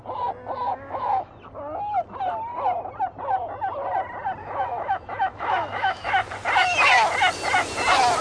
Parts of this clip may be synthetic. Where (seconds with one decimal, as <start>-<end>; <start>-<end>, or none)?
0.6-1.3; 4.4-6.1